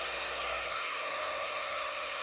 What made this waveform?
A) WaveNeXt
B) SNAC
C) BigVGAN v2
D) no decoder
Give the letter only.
B